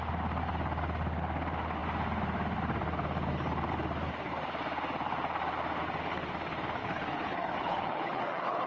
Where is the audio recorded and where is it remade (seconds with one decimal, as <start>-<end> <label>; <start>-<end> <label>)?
0.0-6.8 recorded; 6.8-8.7 remade